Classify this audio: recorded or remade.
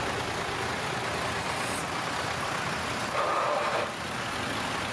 recorded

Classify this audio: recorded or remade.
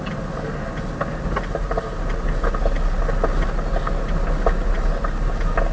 recorded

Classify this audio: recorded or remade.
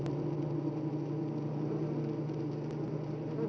recorded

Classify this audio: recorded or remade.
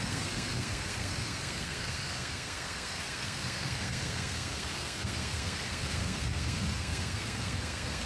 remade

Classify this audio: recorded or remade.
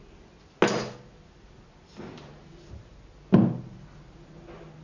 recorded